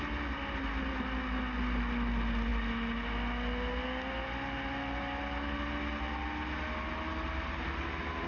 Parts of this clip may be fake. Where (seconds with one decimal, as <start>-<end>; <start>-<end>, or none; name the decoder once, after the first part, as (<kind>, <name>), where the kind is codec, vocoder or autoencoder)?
none